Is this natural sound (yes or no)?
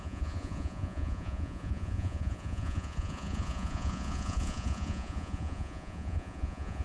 no